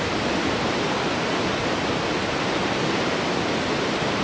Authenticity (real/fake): real